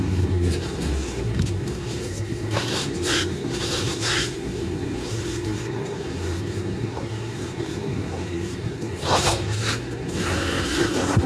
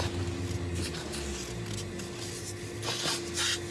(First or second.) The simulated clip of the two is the first